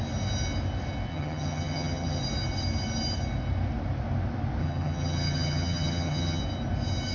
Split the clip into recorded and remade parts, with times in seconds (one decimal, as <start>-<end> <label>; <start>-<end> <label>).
0.0-1.1 recorded; 1.1-2.2 remade; 2.2-4.6 recorded; 4.6-6.4 remade; 6.4-7.1 recorded